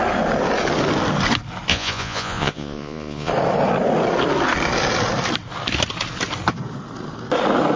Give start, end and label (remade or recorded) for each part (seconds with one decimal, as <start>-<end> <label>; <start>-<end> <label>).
0.0-1.7 recorded; 1.7-3.3 remade; 3.3-7.8 recorded